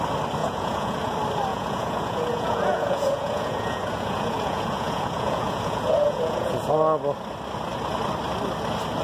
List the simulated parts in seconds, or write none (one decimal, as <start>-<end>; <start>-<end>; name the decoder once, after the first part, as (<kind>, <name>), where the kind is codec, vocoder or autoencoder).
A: 0.4-1.1 (vocoder, Vocos); 1.5-6.7